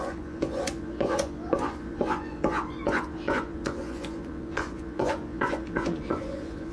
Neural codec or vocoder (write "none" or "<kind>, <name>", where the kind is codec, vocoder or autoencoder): vocoder, Vocos